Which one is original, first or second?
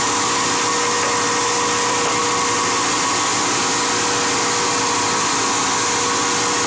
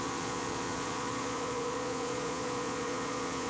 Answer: first